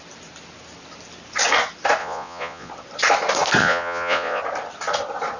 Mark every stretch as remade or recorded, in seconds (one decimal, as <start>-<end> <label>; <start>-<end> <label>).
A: 0.0-2.0 recorded; 2.0-2.7 remade; 2.7-3.6 recorded; 3.6-4.4 remade; 4.4-5.4 recorded

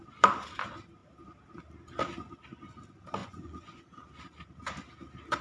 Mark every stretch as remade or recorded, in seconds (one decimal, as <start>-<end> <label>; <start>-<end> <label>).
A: 0.0-3.2 recorded; 3.2-3.8 remade; 3.8-5.4 recorded

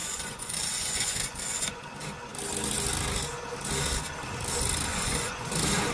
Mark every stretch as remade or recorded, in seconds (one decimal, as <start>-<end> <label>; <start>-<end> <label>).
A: 0.0-1.8 remade; 1.8-4.9 recorded; 4.9-5.5 remade; 5.5-5.9 recorded

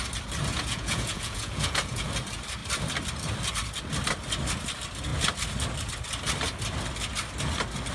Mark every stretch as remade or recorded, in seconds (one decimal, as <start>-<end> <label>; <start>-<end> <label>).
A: 0.0-0.5 recorded; 0.5-2.1 remade; 2.1-7.9 recorded

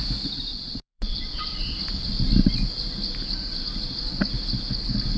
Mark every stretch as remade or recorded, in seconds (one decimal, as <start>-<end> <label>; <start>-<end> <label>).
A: 0.0-0.5 recorded; 0.5-1.4 remade; 1.4-5.2 recorded